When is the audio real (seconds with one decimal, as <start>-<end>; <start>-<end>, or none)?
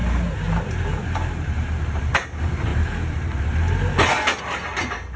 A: 2.7-4.4